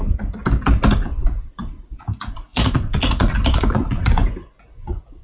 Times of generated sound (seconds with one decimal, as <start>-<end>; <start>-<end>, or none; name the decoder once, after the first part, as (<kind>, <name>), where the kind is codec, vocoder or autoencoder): 0.0-0.4 (vocoder, Vocos); 0.9-5.2